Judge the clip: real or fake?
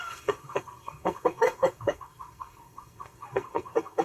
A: fake